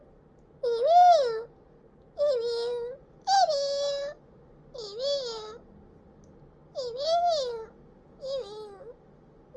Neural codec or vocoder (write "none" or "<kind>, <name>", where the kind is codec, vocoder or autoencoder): none